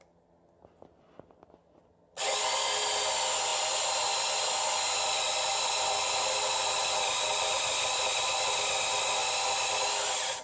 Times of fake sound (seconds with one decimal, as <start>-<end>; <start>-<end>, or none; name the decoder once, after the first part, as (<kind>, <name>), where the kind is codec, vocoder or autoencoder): none